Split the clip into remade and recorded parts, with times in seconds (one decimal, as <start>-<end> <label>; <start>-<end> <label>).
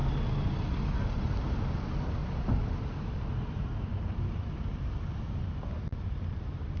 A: 0.0-2.2 recorded; 2.2-5.4 remade; 5.4-5.9 recorded; 5.9-6.8 remade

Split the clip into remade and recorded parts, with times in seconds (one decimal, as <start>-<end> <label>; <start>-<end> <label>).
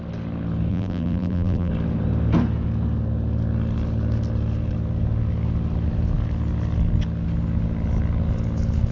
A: 0.0-0.7 recorded; 0.7-1.7 remade; 1.7-8.9 recorded